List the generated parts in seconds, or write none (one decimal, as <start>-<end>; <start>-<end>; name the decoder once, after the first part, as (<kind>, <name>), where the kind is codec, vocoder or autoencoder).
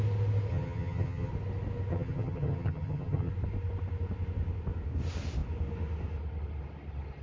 0.5-1.3 (vocoder, HiFi-GAN); 1.9-3.3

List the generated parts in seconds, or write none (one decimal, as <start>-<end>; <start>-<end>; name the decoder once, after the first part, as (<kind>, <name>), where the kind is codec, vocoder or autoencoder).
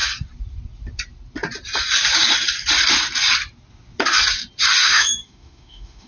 4.8-6.1 (autoencoder, DAC-VAE)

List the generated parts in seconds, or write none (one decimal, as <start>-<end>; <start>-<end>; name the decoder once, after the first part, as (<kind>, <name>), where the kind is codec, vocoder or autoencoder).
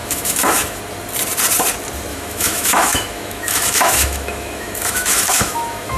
0.0-0.8 (autoencoder, DAC-VAE); 2.1-6.0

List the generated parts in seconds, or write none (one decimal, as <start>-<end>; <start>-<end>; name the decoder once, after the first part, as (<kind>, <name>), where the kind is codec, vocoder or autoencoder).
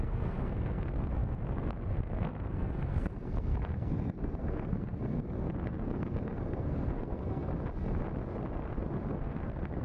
0.0-7.5 (codec, SNAC); 9.1-9.8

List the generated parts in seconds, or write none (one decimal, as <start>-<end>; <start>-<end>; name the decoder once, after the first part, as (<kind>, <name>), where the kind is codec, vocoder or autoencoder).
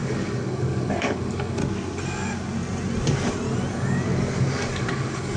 0.0-1.6 (codec, DAC); 3.7-5.4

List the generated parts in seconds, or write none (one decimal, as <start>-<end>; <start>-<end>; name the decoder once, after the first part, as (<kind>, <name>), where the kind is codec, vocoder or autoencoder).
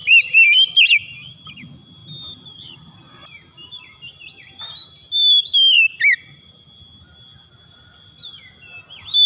none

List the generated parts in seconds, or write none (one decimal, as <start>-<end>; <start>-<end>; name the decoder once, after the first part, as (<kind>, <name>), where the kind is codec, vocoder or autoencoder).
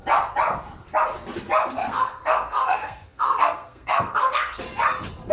1.8-4.6 (codec, SNAC)